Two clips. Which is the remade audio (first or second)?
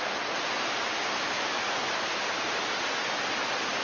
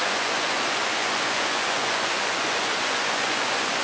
second